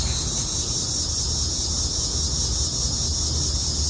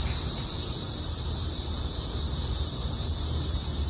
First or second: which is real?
first